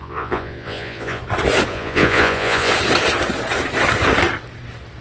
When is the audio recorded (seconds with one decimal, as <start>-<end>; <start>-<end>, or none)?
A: 1.2-1.7; 2.7-5.0